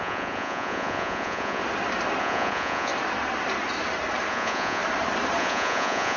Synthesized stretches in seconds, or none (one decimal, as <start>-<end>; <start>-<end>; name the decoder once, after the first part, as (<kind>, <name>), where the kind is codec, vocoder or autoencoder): 0.0-1.6 (vocoder, Vocos); 2.2-2.9; 4.3-4.8; 5.4-6.2